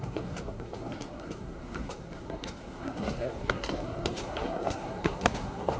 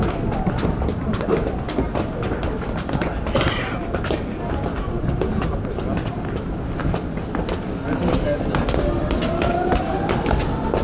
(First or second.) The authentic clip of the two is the second